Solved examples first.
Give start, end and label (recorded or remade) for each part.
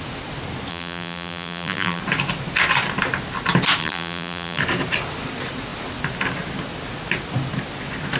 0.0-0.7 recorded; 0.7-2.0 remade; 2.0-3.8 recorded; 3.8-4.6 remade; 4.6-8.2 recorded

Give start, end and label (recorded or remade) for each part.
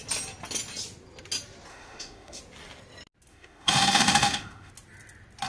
0.0-1.7 recorded; 1.7-2.4 remade; 2.4-3.3 recorded; 3.3-4.7 remade; 4.7-5.5 recorded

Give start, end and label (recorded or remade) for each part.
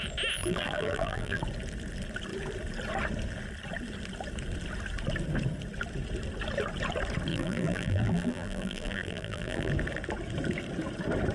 0.0-0.4 recorded; 0.4-1.4 remade; 1.4-7.3 recorded; 7.3-9.7 remade; 9.7-11.3 recorded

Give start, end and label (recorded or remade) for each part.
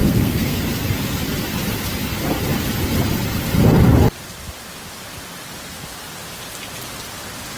0.0-0.6 remade; 0.6-7.6 recorded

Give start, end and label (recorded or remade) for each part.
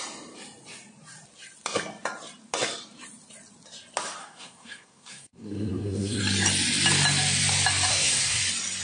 0.0-4.2 recorded; 4.2-6.2 remade; 6.2-7.9 recorded; 7.9-8.4 remade; 8.4-8.8 recorded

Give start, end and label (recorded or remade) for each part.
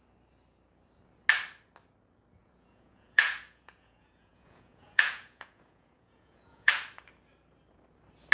0.0-2.4 recorded; 2.4-6.7 remade; 6.7-8.3 recorded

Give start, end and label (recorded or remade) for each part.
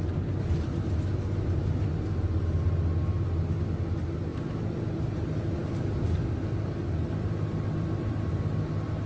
0.0-4.3 recorded; 4.3-8.1 remade; 8.1-9.1 recorded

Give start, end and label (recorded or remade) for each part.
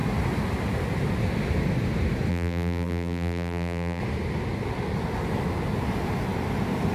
0.0-2.3 recorded; 2.3-4.0 remade; 4.0-6.9 recorded